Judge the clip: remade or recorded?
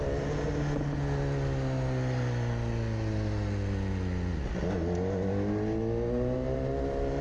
recorded